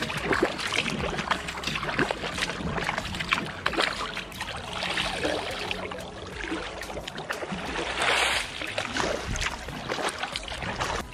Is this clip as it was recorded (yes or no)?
yes